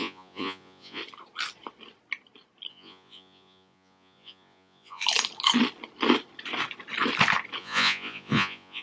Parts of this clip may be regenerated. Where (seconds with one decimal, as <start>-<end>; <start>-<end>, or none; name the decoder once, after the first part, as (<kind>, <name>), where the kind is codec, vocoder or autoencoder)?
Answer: 0.0-1.0 (vocoder, Vocos); 2.7-5.0; 7.6-8.8